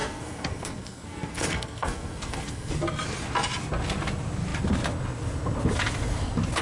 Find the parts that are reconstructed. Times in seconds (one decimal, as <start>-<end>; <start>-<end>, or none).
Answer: 0.0-2.7